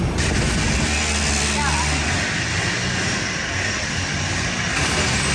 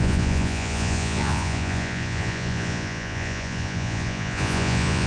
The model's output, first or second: second